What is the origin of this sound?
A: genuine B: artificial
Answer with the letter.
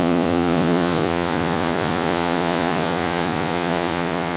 B